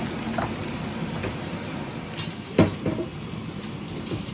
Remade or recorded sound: recorded